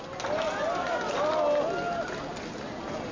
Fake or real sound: real